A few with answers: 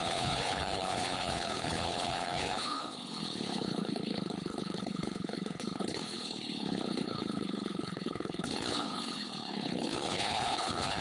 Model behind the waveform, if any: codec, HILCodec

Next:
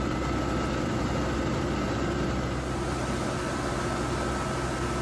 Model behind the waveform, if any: none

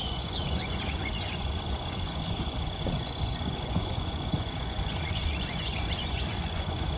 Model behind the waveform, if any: vocoder, Vocos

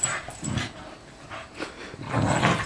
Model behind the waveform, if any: none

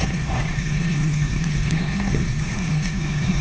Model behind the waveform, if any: codec, SNAC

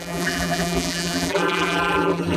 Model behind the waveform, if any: vocoder, BigVGAN v2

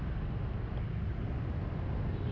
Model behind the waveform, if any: none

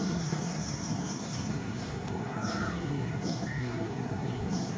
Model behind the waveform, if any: codec, SNAC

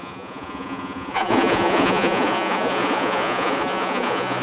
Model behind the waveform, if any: vocoder, Vocos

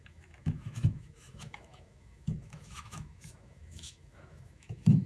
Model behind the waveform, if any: autoencoder, DAC-VAE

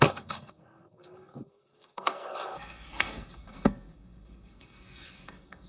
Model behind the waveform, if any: codec, SNAC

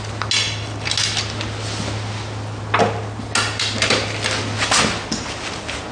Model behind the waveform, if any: none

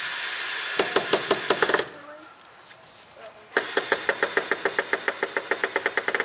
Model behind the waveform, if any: none